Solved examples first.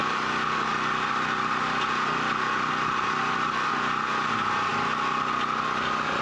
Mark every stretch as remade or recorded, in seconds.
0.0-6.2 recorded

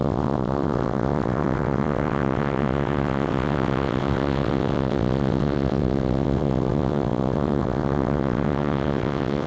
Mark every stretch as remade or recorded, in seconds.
0.0-9.5 remade

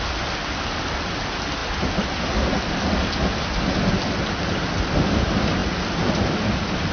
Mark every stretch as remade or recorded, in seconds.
0.0-6.9 recorded

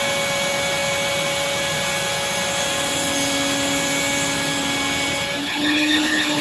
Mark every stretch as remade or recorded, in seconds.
0.0-5.4 recorded; 5.4-6.4 remade

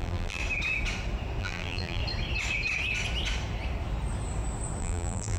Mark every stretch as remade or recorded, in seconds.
0.0-0.4 remade; 0.4-1.4 recorded; 1.4-2.0 remade; 2.0-4.8 recorded; 4.8-5.4 remade

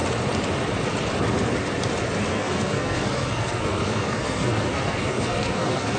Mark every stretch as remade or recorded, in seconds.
0.0-2.3 recorded; 2.3-6.0 remade